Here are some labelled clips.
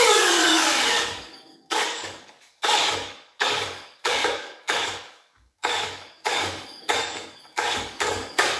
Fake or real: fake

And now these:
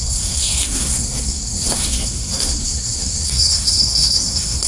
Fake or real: fake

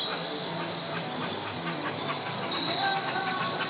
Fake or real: real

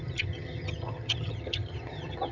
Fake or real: fake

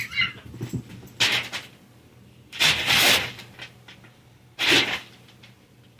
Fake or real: real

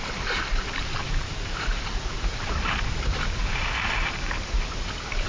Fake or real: fake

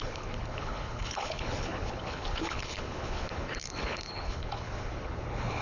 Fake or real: fake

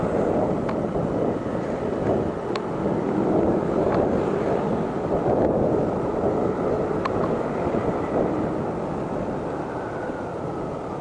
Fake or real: real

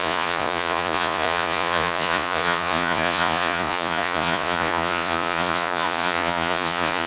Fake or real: fake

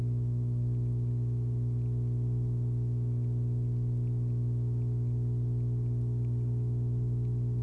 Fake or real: real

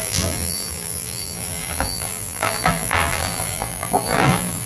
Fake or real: fake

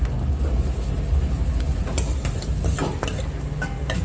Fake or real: real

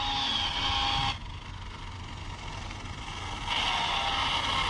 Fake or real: real